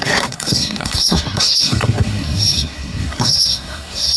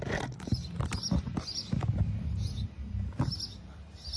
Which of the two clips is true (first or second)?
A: second